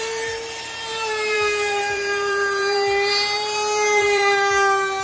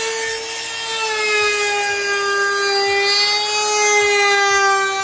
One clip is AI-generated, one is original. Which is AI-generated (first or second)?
first